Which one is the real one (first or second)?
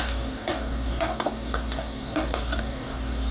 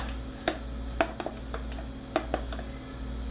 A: second